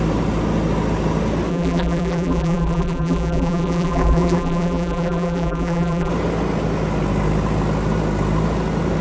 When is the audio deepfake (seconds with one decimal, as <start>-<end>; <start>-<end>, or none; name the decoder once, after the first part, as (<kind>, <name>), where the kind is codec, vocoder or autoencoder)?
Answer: 1.5-6.1 (vocoder, BigVGAN v2)